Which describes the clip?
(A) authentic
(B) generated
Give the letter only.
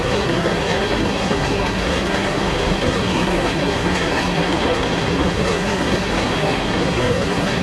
B